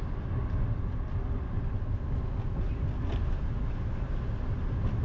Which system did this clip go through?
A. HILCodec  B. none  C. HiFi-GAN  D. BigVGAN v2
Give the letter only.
B